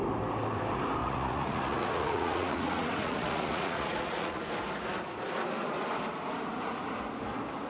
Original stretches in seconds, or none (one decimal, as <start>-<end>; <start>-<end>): 0.0-1.0; 4.4-7.7